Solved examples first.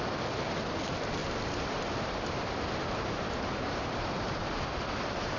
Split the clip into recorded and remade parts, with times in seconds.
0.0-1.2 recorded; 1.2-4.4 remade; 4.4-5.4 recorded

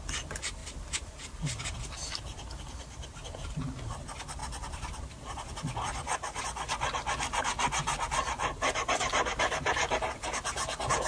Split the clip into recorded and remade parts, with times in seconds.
0.0-0.6 recorded; 0.6-4.0 remade; 4.0-4.4 recorded; 4.4-6.4 remade; 6.4-11.1 recorded

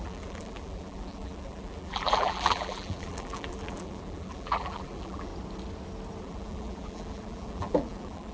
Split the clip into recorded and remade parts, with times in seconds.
0.0-5.3 remade; 5.3-6.2 recorded; 6.2-8.3 remade